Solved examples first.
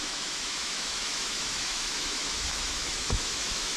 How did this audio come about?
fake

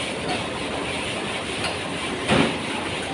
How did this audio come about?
real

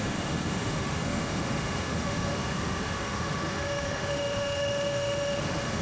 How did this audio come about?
fake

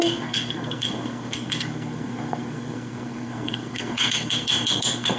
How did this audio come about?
fake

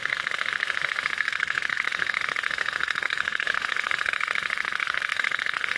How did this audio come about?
fake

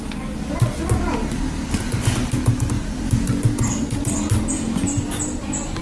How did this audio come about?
real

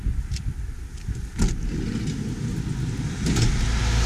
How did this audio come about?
real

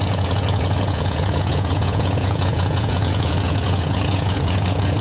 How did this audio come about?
fake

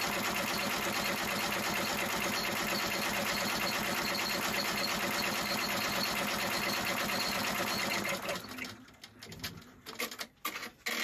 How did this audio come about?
real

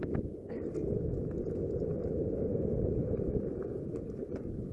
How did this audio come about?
real